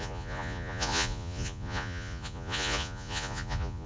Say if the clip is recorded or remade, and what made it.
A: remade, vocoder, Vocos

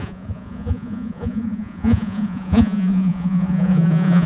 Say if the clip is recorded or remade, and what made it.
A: remade, vocoder, Vocos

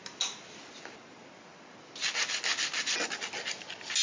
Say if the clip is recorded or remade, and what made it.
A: recorded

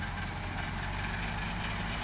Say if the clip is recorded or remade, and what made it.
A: recorded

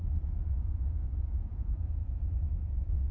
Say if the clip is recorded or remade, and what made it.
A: remade, vocoder, Vocos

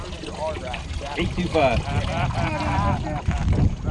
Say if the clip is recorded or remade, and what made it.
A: recorded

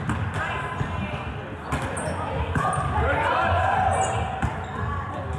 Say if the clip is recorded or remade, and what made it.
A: recorded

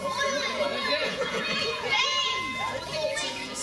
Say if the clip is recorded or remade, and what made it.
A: remade, vocoder, Vocos